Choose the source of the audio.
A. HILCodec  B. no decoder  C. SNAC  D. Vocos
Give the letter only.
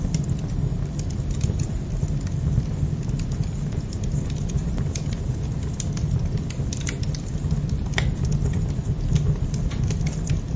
B